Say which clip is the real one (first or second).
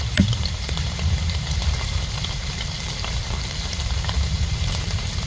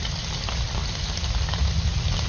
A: second